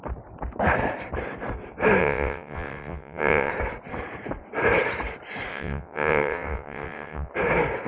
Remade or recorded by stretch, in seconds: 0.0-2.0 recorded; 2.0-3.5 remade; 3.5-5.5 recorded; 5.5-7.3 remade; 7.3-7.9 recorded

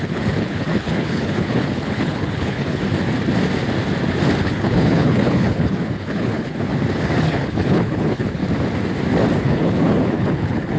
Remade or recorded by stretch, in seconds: 0.0-2.8 remade; 2.8-4.4 recorded; 4.4-6.7 remade; 6.7-7.3 recorded; 7.3-8.4 remade; 8.4-9.4 recorded; 9.4-10.8 remade

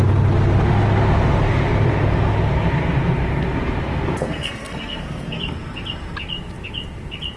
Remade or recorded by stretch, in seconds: 0.0-4.2 recorded; 4.2-5.4 remade; 5.4-7.4 recorded

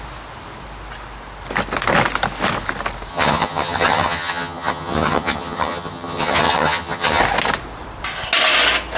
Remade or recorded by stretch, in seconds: 0.0-3.1 recorded; 3.1-7.2 remade; 7.2-9.0 recorded

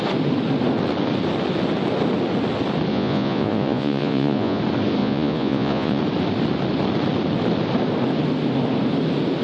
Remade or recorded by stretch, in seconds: 0.0-2.9 recorded; 2.9-4.6 remade; 4.6-5.0 recorded; 5.0-6.0 remade; 6.0-9.4 recorded

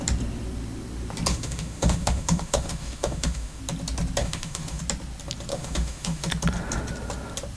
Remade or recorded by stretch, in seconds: 0.0-1.3 recorded; 1.3-3.6 remade; 3.6-4.2 recorded; 4.2-4.8 remade; 4.8-5.5 recorded; 5.5-6.3 remade; 6.3-7.6 recorded

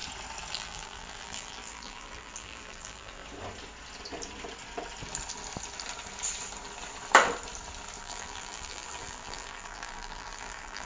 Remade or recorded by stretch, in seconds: 0.0-0.5 recorded; 0.5-3.2 remade; 3.2-8.0 recorded; 8.0-10.9 remade